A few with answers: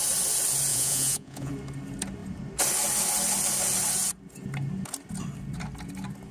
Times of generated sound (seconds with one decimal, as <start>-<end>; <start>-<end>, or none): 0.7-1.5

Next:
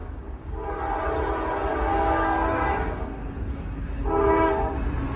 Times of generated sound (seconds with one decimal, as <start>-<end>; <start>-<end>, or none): 0.0-0.8; 1.7-4.8

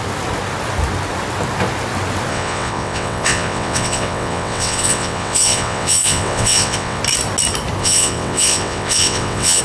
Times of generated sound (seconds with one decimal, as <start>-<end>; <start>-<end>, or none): 2.3-7.0; 7.8-9.6

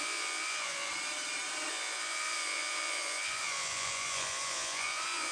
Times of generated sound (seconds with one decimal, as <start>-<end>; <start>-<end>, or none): 0.0-0.9; 1.7-5.3

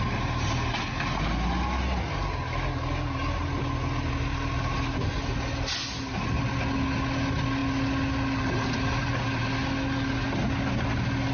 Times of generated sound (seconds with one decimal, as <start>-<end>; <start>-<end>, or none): none

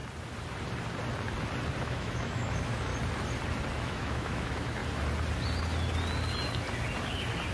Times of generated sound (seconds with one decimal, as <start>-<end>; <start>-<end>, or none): 1.8-2.9; 3.8-4.8

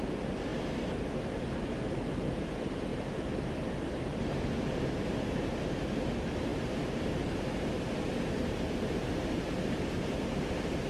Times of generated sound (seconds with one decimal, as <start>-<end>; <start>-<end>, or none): 0.0-10.9